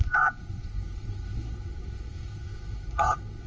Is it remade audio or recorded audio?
remade